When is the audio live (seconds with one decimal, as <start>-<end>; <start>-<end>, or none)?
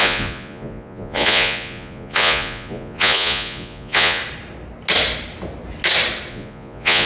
4.2-6.3